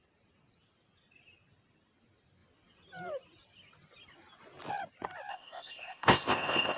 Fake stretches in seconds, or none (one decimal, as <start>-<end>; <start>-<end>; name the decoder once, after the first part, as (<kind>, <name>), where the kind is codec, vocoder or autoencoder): 5.3-6.8 (codec, ZipCodec)